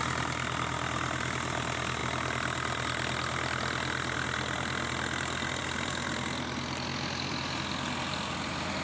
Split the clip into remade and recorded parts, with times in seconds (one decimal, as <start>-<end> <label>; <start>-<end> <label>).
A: 0.0-8.8 recorded